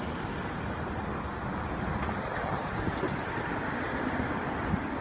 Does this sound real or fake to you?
real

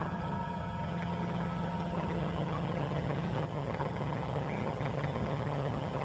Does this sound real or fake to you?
fake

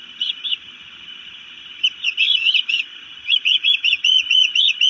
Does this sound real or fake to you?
fake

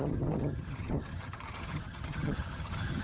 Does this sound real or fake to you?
fake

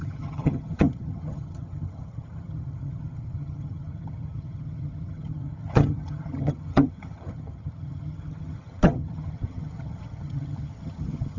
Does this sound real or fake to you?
fake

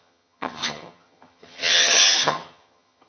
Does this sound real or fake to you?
fake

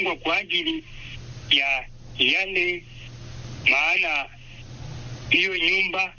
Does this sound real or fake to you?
real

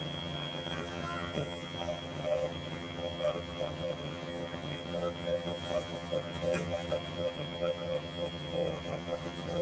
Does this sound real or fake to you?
fake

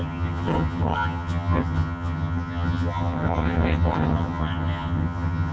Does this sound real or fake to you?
fake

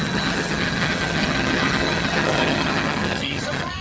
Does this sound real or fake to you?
fake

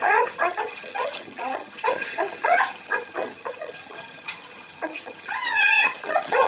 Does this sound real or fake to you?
fake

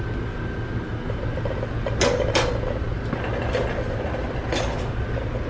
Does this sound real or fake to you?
real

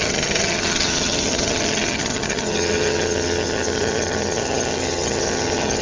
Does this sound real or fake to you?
fake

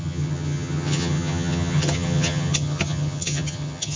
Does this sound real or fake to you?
fake